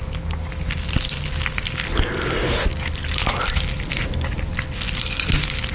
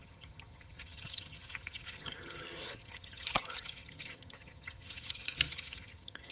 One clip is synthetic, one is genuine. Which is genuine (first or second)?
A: first